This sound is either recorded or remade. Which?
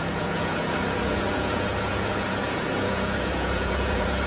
remade